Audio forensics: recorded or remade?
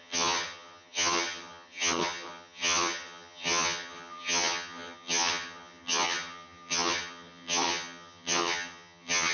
remade